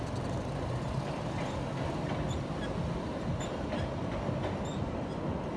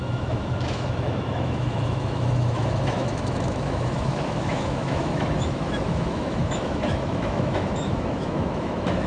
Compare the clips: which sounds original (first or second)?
first